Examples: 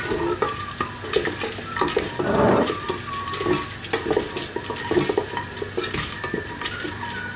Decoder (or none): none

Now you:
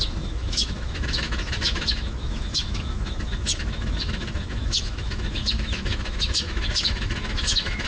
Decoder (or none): autoencoder, DAC-VAE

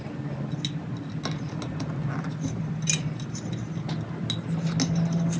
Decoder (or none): none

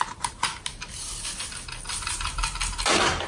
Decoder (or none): none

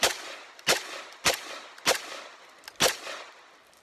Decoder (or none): none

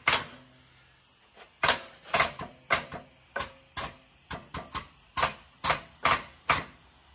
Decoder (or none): none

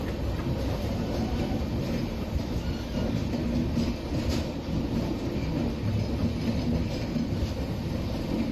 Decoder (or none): none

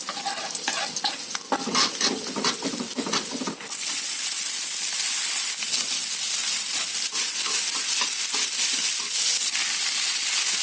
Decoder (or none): none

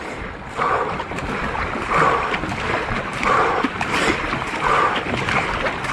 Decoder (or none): none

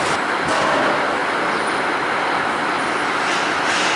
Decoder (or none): none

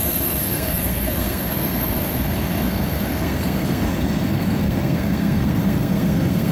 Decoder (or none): codec, SNAC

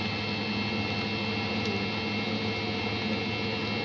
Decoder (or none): none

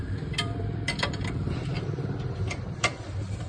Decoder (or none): vocoder, BigVGAN v2